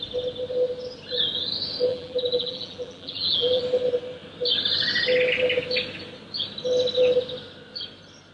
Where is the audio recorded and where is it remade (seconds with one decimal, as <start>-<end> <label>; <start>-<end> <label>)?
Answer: 0.0-1.9 recorded; 1.9-3.6 remade; 3.6-8.3 recorded

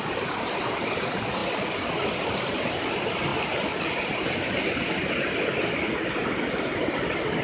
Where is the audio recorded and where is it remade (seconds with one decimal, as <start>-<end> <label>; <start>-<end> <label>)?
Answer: 0.0-7.4 recorded

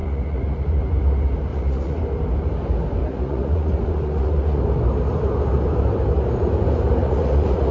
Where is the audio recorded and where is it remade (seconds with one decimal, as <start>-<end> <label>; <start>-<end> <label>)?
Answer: 0.0-0.8 remade; 0.8-1.5 recorded; 1.5-2.0 remade; 2.0-3.0 recorded; 3.0-4.6 remade; 4.6-7.0 recorded; 7.0-7.7 remade

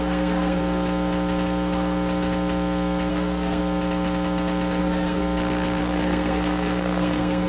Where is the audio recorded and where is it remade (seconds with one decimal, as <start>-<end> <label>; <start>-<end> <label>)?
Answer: 0.0-0.6 remade; 0.6-3.1 recorded; 3.1-3.6 remade; 3.6-4.8 recorded; 4.8-5.2 remade; 5.2-5.8 recorded; 5.8-7.5 remade

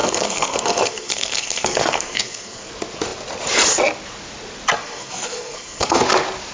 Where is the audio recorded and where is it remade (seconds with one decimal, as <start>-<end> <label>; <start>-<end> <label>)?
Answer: 0.0-2.7 remade; 2.7-4.8 recorded; 4.8-6.0 remade; 6.0-6.5 recorded

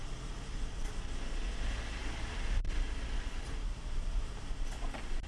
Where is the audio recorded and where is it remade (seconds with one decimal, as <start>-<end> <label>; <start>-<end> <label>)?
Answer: 0.0-0.9 remade; 0.9-2.0 recorded; 2.0-4.7 remade; 4.7-5.3 recorded

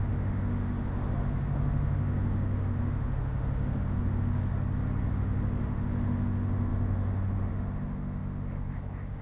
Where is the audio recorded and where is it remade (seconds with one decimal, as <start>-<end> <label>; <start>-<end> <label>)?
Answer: 0.0-4.5 remade; 4.5-5.1 recorded; 5.1-9.2 remade

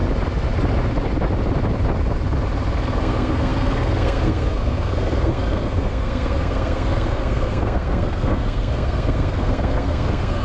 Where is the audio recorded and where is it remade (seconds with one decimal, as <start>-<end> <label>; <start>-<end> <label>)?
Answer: 0.0-3.0 recorded; 3.0-10.4 remade